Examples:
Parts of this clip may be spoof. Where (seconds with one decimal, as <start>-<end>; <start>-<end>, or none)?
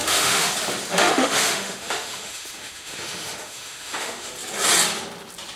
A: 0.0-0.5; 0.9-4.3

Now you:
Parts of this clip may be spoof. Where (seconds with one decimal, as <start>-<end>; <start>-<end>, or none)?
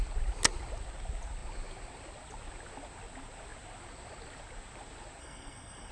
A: 5.2-5.9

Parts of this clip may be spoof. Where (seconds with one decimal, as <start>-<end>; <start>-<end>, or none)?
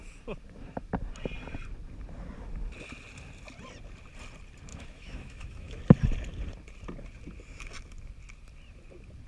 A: 4.7-5.8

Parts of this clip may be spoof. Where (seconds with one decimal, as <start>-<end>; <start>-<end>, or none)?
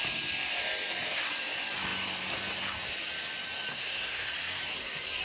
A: 3.7-4.3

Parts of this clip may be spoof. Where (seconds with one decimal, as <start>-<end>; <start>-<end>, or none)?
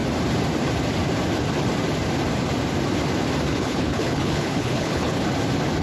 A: 3.5-5.2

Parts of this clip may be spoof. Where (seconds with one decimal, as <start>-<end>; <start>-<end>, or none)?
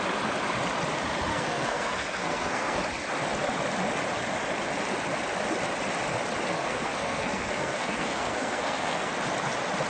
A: 1.3-2.8; 6.5-9.1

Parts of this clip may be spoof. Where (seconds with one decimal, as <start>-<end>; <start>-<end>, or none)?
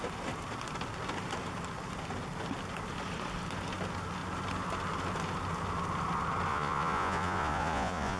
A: 6.5-8.2